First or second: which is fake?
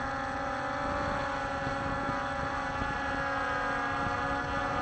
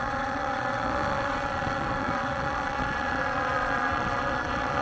second